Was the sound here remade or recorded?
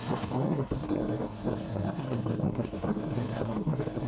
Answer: remade